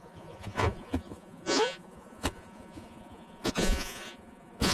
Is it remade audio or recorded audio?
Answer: remade